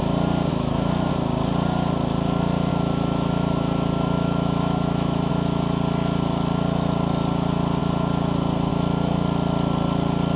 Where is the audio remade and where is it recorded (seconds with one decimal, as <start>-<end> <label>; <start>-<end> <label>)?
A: 0.0-0.5 recorded; 0.5-1.1 remade; 1.1-2.7 recorded; 2.7-5.3 remade; 5.3-10.4 recorded